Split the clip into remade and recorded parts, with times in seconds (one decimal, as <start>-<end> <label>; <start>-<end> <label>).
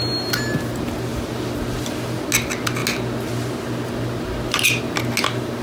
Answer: 0.0-5.6 recorded